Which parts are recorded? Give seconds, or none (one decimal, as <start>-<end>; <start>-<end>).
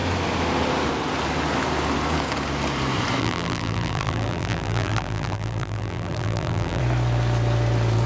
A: 0.0-3.2; 6.8-8.1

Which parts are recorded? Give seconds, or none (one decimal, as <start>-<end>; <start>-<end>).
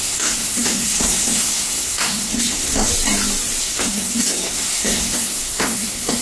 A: 2.9-3.6